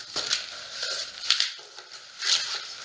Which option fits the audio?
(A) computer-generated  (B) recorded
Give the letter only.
B